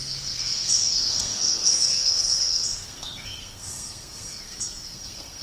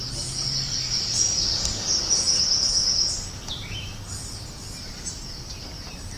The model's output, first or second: first